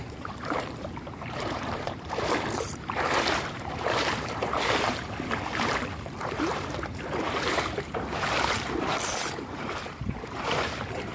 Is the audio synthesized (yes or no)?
yes